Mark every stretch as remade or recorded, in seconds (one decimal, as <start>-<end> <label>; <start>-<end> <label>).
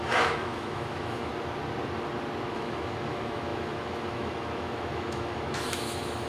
0.0-1.3 remade; 1.3-2.5 recorded; 2.5-6.3 remade